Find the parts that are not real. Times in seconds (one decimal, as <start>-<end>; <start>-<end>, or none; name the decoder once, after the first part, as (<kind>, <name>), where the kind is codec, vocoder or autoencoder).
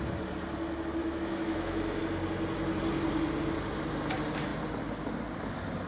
1.0-2.0 (autoencoder, DAC-VAE)